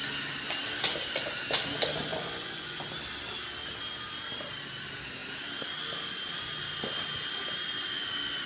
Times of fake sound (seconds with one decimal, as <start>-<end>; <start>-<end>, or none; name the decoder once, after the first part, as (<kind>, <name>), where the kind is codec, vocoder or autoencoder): 2.1-2.8 (vocoder, Vocos)